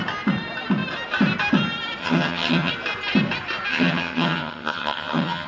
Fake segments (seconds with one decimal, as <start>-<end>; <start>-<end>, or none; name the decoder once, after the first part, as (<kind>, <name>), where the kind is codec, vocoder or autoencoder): 2.0-2.7 (vocoder, HiFi-GAN); 3.7-5.5